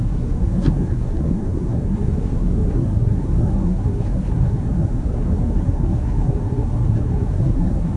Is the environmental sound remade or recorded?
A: remade